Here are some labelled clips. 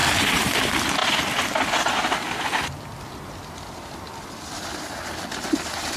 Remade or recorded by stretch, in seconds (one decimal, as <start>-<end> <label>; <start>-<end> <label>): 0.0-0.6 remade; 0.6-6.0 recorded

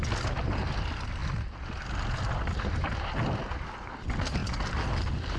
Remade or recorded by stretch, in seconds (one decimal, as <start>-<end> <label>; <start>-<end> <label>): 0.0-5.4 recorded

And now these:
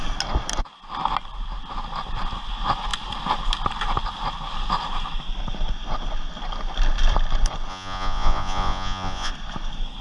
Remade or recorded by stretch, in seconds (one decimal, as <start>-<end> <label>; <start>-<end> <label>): 0.0-7.7 recorded; 7.7-9.3 remade; 9.3-10.0 recorded

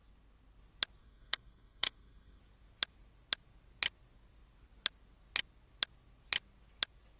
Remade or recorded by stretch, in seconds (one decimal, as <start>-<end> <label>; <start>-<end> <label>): 0.0-1.0 recorded; 1.0-2.4 remade; 2.4-7.2 recorded